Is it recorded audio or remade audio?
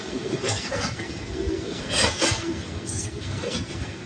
remade